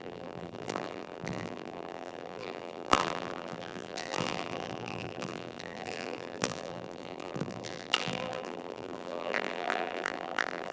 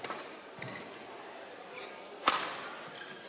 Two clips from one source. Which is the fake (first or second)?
first